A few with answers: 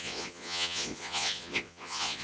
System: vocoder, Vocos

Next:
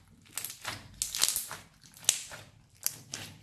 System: none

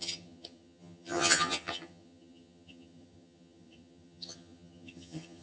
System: vocoder, HiFi-GAN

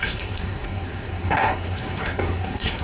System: codec, SNAC